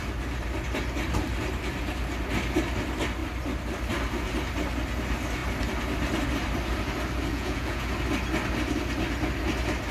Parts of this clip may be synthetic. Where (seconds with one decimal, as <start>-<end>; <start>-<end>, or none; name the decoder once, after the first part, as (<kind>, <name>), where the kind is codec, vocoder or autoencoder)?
7.3-7.9 (vocoder, Vocos)